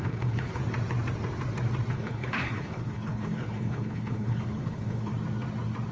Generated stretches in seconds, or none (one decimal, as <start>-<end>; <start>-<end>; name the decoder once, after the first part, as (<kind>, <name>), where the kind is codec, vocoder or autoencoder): 0.0-0.6 (codec, HILCodec); 1.9-5.1